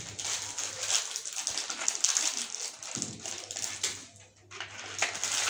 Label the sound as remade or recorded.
recorded